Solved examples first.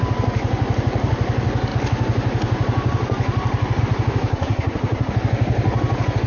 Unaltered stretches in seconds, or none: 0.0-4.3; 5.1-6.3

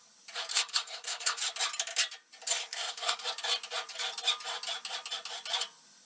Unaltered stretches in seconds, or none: 0.0-0.5; 1.4-2.6; 3.2-6.1

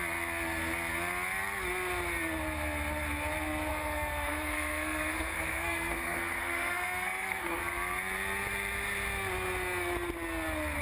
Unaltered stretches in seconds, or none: 0.0-3.7; 7.6-10.8